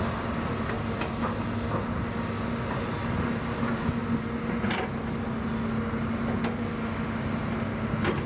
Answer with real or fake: real